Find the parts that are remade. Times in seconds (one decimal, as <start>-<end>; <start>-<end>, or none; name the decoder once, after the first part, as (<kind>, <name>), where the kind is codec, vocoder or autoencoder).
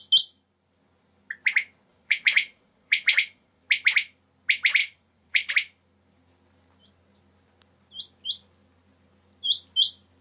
1.9-3.6 (vocoder, Vocos); 4.8-5.5